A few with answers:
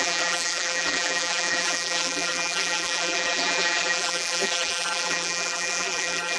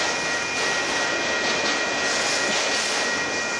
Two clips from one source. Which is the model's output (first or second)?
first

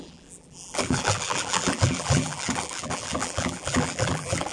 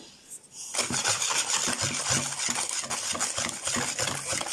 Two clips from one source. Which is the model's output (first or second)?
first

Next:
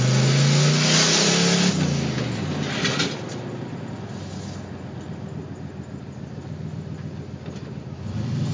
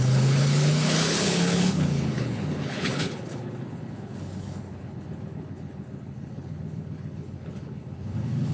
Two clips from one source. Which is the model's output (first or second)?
second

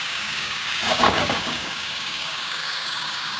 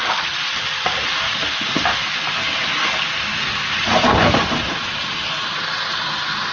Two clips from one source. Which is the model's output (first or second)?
first